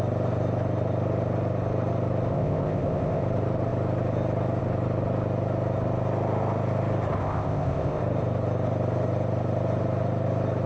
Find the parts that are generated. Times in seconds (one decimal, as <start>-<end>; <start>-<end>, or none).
2.3-3.2; 7.2-8.0